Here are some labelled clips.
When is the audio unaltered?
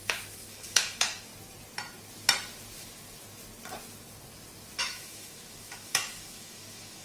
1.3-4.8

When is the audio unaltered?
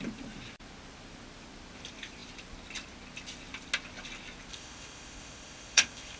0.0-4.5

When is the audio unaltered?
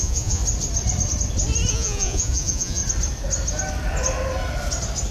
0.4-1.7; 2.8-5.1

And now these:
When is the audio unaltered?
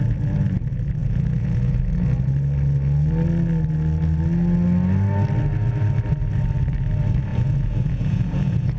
0.0-1.0; 1.8-7.3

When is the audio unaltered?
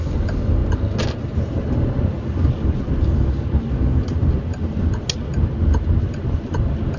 0.0-7.0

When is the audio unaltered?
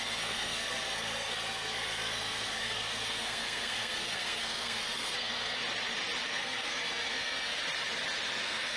5.6-6.3; 7.6-8.4